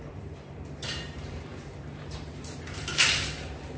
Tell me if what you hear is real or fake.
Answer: fake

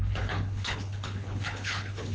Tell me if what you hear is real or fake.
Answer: fake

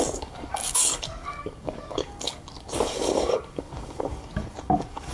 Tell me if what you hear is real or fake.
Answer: fake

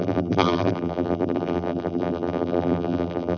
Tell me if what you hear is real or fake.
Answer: fake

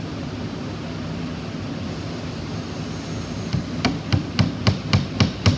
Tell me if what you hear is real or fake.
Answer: real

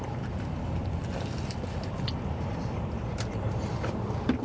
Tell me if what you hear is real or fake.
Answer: fake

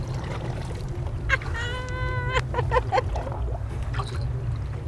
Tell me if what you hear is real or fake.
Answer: real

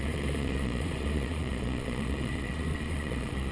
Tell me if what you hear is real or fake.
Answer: fake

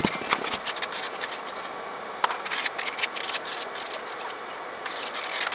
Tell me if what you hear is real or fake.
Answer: real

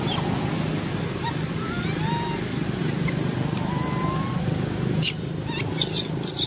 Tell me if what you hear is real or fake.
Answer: real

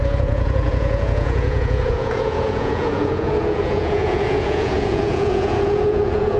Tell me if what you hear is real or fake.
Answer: fake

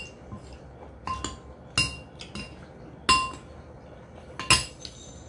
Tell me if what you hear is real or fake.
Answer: real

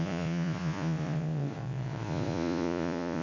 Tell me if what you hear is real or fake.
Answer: fake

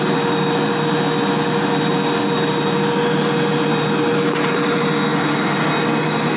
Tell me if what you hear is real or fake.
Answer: real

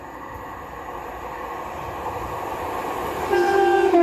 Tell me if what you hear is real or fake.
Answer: real